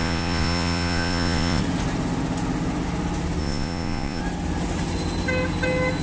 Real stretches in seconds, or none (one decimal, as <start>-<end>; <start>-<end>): 1.6-3.4; 4.2-6.0